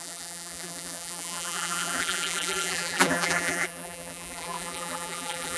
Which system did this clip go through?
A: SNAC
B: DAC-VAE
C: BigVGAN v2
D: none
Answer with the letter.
C